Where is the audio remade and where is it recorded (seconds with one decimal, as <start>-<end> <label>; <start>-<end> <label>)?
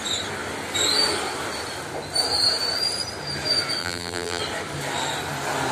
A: 0.0-3.8 recorded; 3.8-4.4 remade; 4.4-5.7 recorded